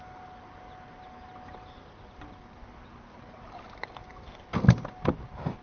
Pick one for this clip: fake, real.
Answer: real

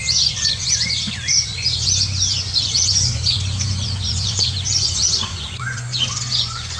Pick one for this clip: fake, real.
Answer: fake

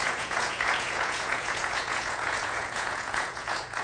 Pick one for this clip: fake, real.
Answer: fake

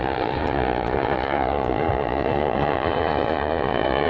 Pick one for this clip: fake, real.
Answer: fake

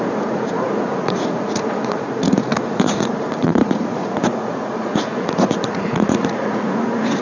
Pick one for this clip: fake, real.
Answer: fake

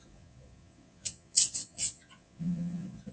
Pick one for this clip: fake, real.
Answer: fake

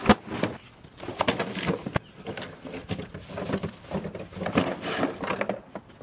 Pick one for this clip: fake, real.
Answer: real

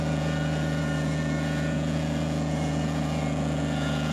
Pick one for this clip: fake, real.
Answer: fake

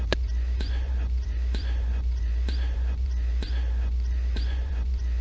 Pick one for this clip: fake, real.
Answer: fake